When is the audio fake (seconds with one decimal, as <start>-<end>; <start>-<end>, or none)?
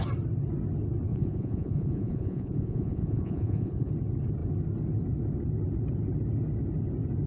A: 1.1-3.9